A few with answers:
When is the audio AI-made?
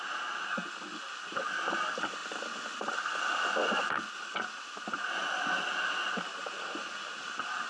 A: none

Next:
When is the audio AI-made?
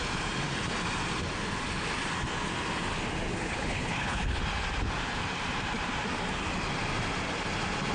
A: 3.3-4.4 (codec, HILCodec)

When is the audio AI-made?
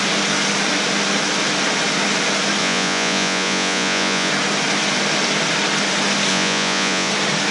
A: 2.6-4.3 (vocoder, Vocos); 6.3-7.1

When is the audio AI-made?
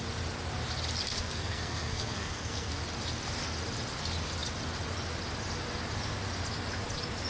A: 1.1-2.8 (codec, SNAC)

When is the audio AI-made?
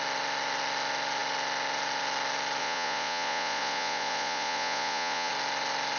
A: 2.6-5.3 (vocoder, Vocos)